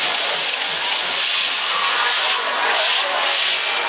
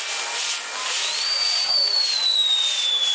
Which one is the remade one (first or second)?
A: first